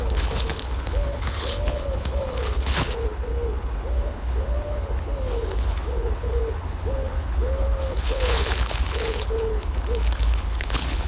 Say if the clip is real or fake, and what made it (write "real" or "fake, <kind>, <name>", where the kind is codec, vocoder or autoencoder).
fake, codec, HILCodec